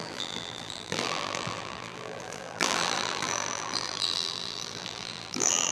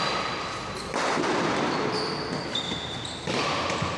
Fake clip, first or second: first